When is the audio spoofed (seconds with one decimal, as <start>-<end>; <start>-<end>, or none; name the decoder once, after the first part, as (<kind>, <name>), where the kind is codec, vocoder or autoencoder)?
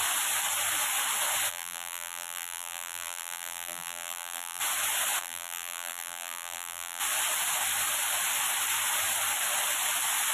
1.5-4.6 (vocoder, BigVGAN v2); 5.2-7.0